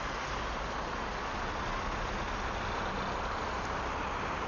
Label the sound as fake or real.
real